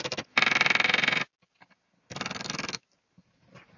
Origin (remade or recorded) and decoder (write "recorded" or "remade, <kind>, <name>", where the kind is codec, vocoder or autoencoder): recorded